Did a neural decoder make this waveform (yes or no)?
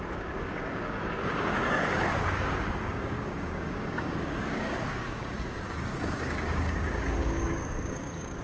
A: yes